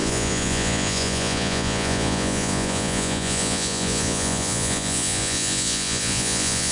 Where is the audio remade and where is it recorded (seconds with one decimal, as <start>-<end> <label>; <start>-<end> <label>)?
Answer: 0.0-6.7 remade